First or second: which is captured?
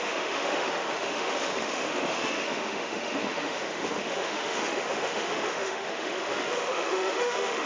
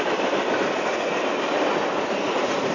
second